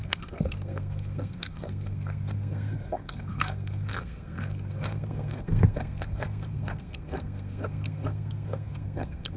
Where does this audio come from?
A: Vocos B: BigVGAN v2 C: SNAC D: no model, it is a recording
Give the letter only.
C